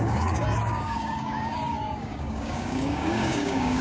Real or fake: fake